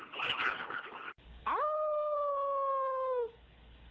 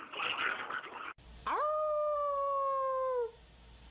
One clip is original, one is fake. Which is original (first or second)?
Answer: second